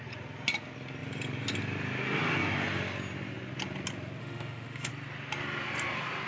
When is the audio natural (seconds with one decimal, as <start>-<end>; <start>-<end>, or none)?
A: 0.0-4.2; 4.9-6.3